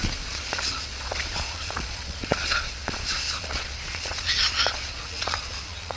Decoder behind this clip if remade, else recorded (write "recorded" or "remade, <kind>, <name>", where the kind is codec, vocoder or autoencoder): remade, vocoder, Vocos